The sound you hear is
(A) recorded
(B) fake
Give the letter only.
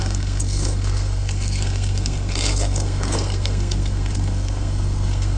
B